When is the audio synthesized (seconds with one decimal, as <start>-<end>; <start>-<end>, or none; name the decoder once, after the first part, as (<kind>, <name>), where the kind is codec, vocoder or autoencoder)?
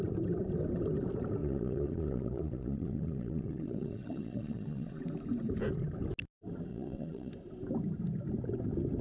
1.4-5.0 (vocoder, Vocos); 6.7-7.3